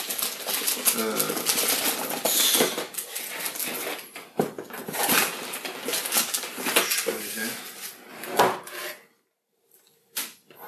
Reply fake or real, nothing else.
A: real